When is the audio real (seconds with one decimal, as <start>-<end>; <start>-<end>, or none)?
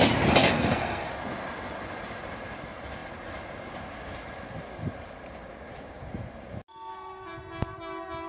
0.0-0.4; 1.1-8.3